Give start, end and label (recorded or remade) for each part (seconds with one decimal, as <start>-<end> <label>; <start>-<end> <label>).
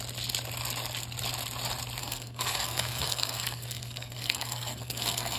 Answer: 0.0-2.0 recorded; 2.0-5.4 remade